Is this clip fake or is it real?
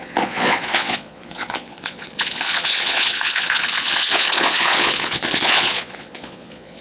fake